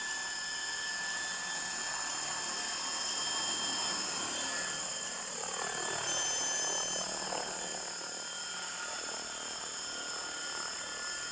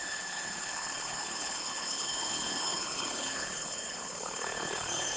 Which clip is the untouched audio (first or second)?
first